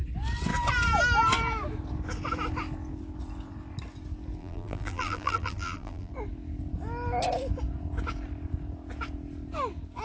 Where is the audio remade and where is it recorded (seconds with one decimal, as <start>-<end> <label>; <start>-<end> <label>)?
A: 0.0-4.4 recorded; 4.4-6.1 remade; 6.1-10.0 recorded